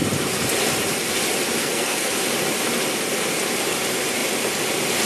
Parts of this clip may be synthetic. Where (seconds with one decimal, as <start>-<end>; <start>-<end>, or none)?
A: 1.6-2.1

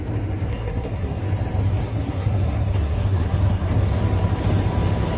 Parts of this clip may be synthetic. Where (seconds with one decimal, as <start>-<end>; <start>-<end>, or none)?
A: 0.5-1.2; 1.8-3.7